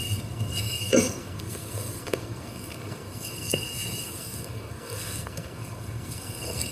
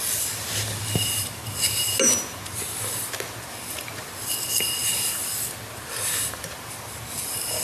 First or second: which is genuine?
second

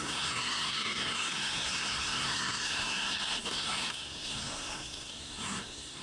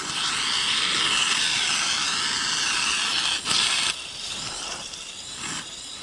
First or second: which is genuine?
second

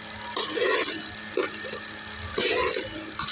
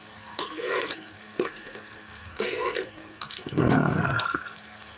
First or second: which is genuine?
first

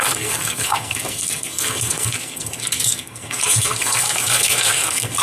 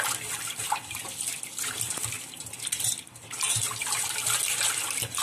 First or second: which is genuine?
second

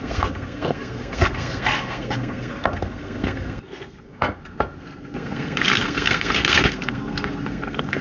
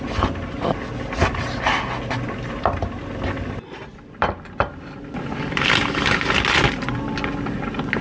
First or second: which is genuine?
second